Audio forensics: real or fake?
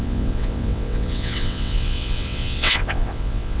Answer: fake